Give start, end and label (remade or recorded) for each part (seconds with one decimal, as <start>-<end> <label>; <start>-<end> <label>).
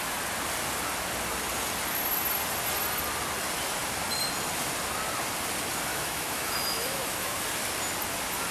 0.0-5.9 recorded; 5.9-7.3 remade; 7.3-8.5 recorded